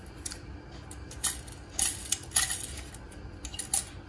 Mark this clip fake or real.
real